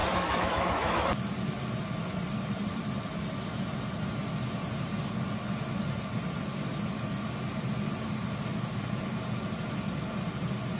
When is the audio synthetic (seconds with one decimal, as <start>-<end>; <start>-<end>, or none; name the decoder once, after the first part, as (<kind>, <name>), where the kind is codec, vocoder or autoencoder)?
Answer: 0.0-1.1 (autoencoder, DAC-VAE)

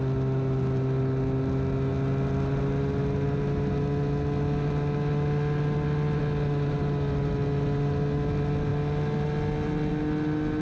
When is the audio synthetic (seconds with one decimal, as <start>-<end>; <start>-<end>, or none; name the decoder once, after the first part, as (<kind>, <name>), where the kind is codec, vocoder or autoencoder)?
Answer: none

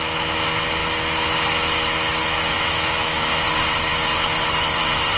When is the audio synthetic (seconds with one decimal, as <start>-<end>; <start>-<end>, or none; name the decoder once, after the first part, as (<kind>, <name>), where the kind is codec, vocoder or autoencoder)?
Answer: 2.2-3.5 (autoencoder, DAC-VAE)